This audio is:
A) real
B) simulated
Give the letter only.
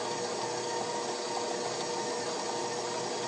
A